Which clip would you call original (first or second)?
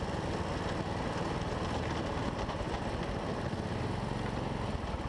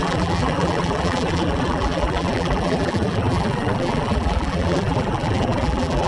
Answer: first